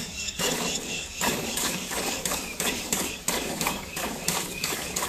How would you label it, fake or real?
fake